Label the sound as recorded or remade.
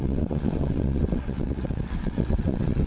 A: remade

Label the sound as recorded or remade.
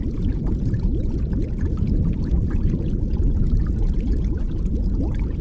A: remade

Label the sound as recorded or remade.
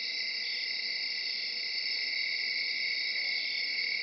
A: recorded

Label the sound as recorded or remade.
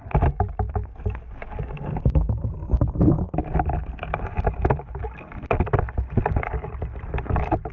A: recorded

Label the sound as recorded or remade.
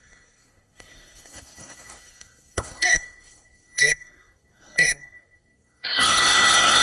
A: remade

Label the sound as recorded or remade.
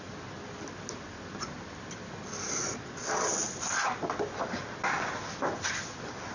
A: recorded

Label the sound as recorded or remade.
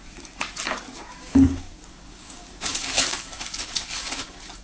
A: remade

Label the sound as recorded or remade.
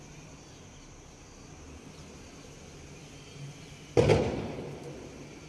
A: recorded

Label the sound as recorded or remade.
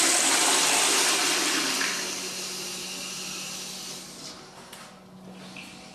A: recorded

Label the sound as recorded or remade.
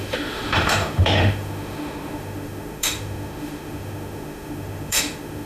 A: remade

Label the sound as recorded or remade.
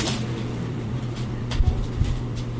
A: remade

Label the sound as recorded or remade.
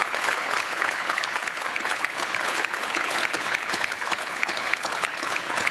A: remade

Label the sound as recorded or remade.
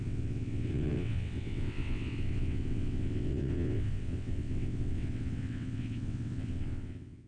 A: remade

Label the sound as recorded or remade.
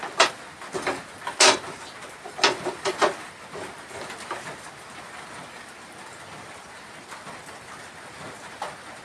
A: recorded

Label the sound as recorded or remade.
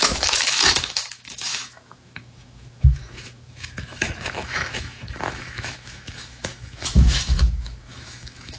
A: remade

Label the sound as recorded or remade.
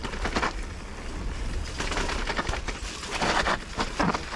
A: recorded